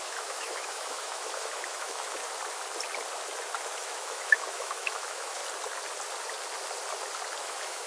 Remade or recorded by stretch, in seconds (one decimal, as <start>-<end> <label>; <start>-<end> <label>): 0.0-2.2 remade; 2.2-3.8 recorded; 3.8-5.4 remade; 5.4-7.4 recorded; 7.4-7.9 remade